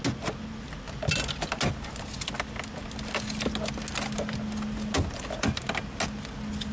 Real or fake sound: real